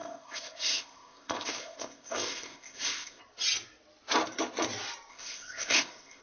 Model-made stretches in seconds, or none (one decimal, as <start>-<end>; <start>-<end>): 0.0-3.2; 5.1-6.2